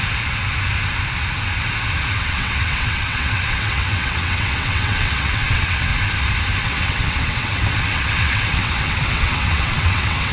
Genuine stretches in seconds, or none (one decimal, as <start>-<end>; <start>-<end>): 0.0-2.1; 5.9-6.6